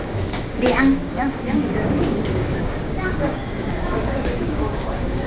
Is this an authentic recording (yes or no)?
no